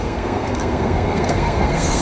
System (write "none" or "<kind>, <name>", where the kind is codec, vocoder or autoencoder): codec, SNAC